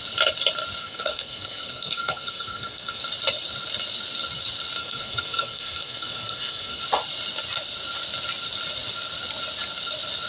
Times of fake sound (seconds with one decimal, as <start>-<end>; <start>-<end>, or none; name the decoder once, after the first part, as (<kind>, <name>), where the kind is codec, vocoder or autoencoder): 0.8-3.0 (codec, SNAC); 4.8-6.8